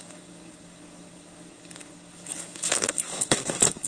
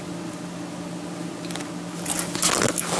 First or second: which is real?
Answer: second